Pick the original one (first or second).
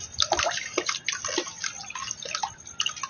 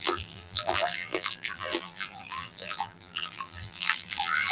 first